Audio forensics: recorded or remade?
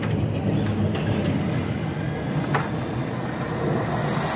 recorded